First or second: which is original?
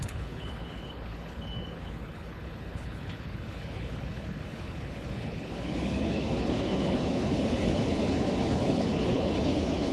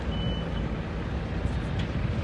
second